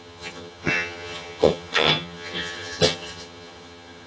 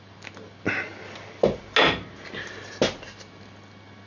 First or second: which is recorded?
second